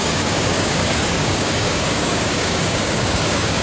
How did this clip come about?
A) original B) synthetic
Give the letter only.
B